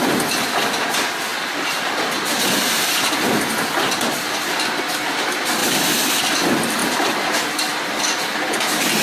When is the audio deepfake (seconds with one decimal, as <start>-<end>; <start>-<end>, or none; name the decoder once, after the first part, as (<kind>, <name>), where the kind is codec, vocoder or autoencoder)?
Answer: none